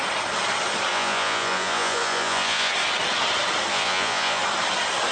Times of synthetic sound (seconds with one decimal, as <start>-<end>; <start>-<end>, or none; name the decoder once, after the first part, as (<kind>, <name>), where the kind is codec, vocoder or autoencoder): 0.9-2.7 (vocoder, Vocos); 3.7-4.4